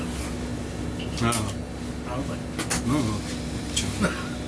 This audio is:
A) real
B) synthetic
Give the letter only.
A